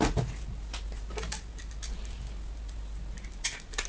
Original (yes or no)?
yes